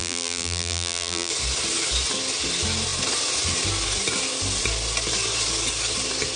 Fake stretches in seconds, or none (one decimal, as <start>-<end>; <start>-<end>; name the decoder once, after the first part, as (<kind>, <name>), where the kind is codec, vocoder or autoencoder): 0.0-1.3 (vocoder, BigVGAN v2)